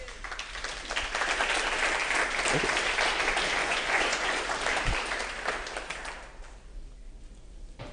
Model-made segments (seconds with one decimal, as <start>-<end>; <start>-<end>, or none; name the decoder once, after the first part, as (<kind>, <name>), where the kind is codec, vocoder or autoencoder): 3.6-4.4 (vocoder, Vocos)